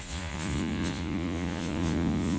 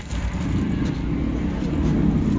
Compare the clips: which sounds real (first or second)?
second